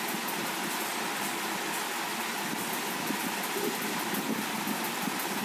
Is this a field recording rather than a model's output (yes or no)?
yes